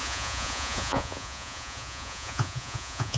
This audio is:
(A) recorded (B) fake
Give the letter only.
B